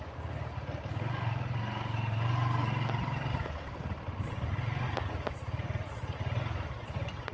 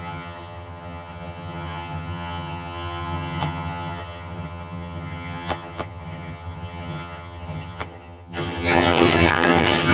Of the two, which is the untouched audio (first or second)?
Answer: first